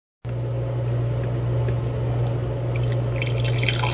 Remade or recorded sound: recorded